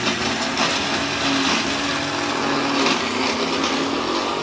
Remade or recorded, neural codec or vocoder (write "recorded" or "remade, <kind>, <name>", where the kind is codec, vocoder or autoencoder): recorded